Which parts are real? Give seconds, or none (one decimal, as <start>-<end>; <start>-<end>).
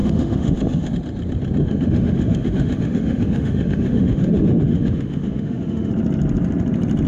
0.9-1.6; 5.9-7.1